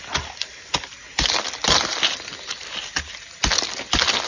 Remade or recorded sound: recorded